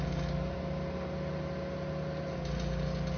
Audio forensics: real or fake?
real